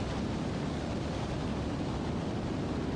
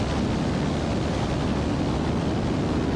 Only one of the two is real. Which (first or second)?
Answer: second